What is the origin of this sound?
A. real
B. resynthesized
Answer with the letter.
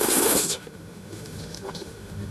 B